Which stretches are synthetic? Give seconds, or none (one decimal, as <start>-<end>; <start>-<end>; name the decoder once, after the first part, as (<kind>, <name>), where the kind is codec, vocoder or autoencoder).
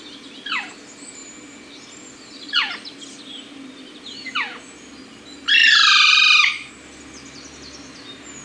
1.2-5.0 (vocoder, BigVGAN v2); 5.6-6.7